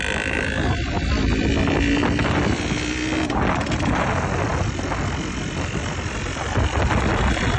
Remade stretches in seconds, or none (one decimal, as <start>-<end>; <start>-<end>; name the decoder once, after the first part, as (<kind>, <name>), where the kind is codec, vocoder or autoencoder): none